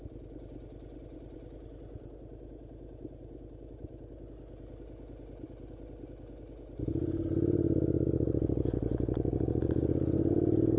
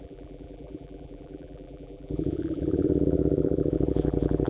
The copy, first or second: second